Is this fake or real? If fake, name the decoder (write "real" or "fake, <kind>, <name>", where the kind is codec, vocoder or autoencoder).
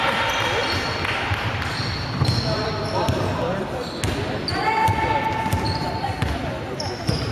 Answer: real